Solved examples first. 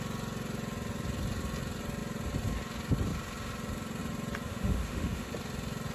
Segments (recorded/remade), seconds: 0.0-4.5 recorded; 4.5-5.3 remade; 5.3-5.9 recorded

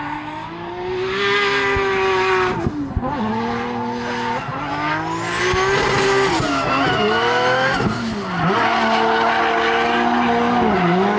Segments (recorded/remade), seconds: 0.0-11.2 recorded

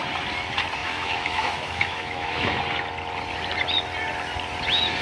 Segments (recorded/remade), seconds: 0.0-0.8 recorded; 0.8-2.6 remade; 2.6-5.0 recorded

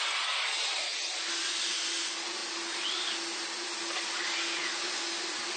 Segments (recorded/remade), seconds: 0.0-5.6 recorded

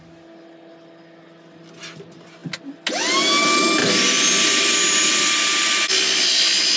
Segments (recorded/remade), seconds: 0.0-6.8 recorded

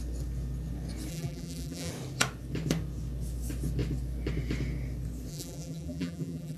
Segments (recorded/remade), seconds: 0.0-1.1 recorded; 1.1-1.9 remade; 1.9-5.3 recorded; 5.3-6.6 remade

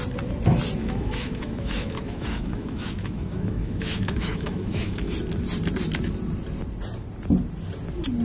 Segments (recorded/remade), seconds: 0.0-0.8 recorded; 0.8-5.1 remade; 5.1-8.2 recorded